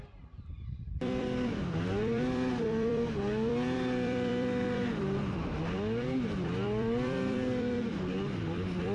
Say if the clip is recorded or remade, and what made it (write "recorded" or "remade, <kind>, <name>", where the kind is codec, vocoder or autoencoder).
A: remade, vocoder, BigVGAN v2